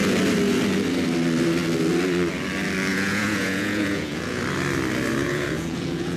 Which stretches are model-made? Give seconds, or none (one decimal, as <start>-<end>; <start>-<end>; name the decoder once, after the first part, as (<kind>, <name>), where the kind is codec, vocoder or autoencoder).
2.9-4.4 (vocoder, Vocos); 5.2-6.2

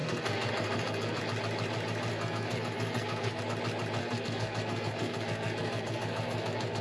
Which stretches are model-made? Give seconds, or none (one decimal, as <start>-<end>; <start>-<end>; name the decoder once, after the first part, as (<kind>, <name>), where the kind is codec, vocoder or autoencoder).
0.0-1.2 (codec, SNAC); 2.1-3.4; 4.0-6.8

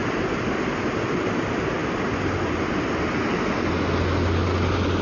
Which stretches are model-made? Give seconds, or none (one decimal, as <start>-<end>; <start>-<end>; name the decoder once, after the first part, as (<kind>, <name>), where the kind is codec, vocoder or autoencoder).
none

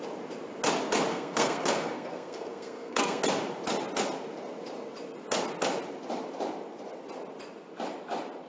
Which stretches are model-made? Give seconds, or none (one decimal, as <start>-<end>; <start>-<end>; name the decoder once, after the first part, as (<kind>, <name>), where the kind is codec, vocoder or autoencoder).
1.1-3.2 (codec, SNAC)

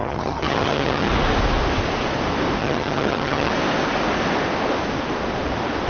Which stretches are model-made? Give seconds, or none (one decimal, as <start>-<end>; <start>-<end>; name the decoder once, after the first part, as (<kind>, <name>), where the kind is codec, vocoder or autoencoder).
0.0-1.1 (vocoder, HiFi-GAN); 2.6-3.5

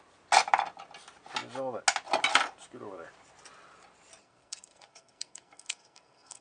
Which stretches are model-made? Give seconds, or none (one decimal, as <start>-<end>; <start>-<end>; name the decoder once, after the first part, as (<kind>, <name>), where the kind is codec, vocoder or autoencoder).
4.2-6.4 (codec, SNAC)

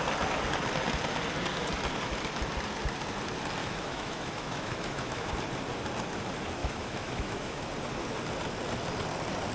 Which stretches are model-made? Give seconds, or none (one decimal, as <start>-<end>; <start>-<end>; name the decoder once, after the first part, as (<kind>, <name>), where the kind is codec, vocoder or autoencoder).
3.6-5.3 (autoencoder, DAC-VAE); 6.6-7.7

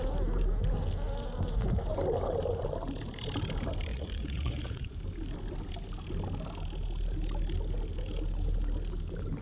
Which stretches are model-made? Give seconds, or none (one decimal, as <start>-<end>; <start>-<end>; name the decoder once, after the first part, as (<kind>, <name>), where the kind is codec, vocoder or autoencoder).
3.9-5.0 (vocoder, Vocos)